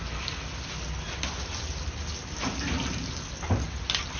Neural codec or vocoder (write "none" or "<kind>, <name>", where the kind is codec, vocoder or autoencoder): none